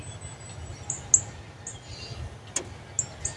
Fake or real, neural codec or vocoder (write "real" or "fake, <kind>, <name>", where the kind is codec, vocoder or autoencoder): real